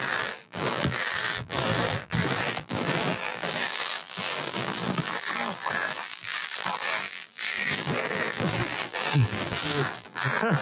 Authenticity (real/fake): fake